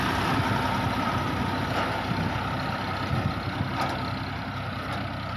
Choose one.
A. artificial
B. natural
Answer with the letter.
B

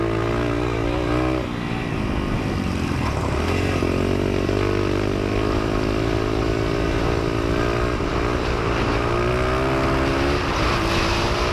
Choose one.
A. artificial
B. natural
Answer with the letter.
B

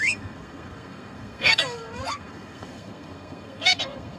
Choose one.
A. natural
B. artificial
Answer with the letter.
B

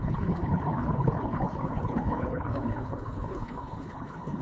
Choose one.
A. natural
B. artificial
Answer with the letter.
B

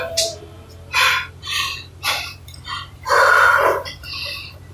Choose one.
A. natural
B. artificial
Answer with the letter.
B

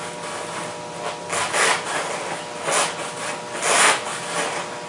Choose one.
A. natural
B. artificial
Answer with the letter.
A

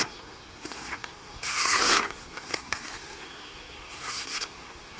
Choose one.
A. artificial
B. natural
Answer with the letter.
A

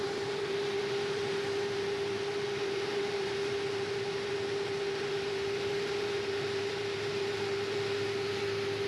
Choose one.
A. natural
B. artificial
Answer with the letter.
A